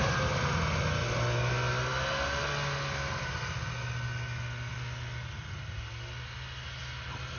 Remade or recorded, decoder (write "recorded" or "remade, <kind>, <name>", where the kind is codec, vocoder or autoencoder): recorded